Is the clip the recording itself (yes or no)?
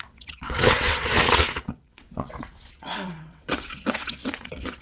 no